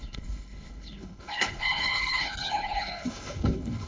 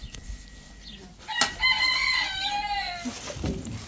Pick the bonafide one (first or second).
second